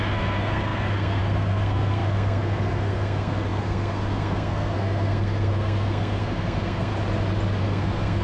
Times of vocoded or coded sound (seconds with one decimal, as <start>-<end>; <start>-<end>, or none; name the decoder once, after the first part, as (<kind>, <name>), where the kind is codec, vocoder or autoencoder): 0.0-6.9 (codec, SNAC); 7.6-8.2